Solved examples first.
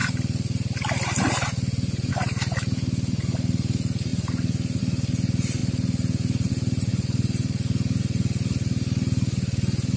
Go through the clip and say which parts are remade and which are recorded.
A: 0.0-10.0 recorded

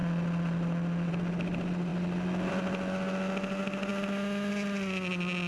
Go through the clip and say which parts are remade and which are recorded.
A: 0.0-5.5 recorded

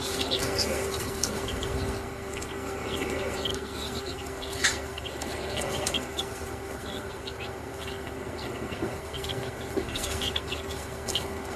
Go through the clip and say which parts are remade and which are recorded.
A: 0.0-11.6 remade